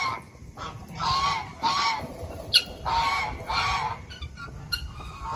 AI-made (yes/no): yes